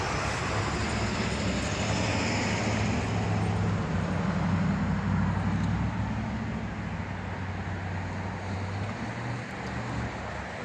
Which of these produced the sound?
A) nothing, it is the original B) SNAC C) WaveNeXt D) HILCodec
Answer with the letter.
A